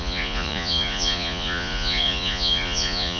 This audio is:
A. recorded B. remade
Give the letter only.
B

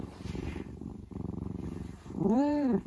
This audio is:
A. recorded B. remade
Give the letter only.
B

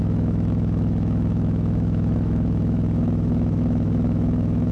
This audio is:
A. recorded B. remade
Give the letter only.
B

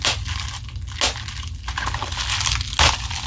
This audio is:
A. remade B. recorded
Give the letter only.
B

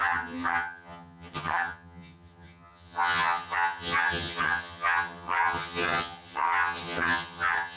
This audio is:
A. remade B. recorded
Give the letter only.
A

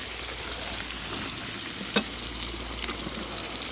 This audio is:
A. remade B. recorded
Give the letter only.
B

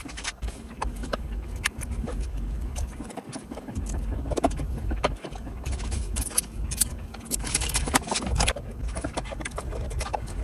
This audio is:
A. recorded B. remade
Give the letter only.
B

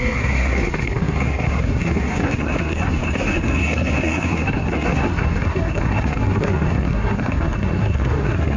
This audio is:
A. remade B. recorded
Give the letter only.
A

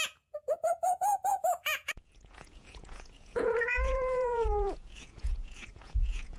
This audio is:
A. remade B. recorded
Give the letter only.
A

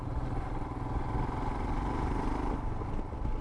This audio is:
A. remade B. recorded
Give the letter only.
B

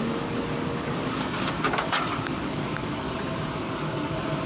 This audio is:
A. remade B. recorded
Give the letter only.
A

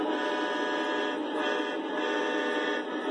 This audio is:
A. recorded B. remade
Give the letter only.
A